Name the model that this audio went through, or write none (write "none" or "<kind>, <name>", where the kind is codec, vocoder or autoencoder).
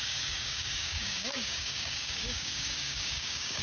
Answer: codec, DAC